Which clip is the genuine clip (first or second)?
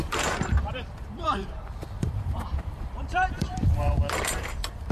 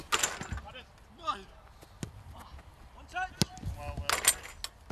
second